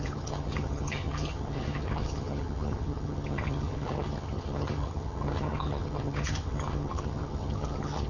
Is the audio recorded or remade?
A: remade